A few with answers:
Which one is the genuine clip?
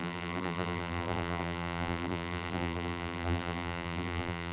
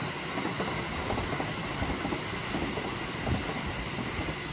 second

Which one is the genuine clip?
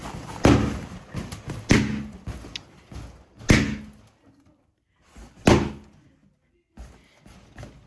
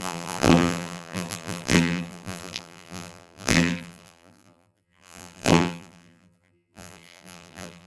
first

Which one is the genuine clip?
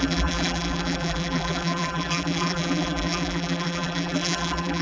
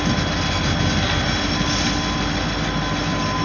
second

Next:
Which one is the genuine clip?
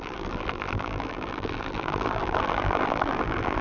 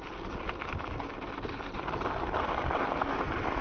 second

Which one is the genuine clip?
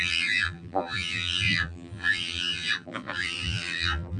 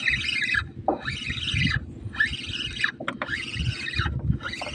second